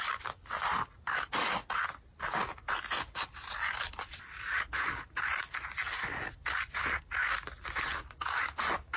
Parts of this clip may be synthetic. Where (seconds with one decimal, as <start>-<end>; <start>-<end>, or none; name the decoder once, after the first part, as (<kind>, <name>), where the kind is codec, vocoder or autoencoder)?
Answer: none